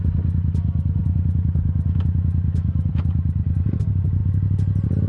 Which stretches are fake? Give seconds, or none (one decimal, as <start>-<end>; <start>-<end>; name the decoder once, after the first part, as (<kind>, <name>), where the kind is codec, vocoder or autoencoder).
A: none